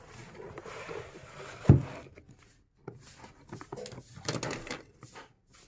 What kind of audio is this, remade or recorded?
recorded